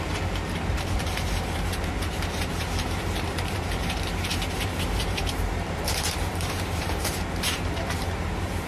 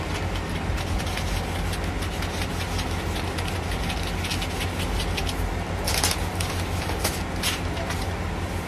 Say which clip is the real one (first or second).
second